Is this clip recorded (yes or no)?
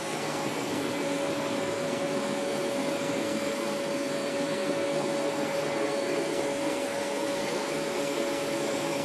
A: no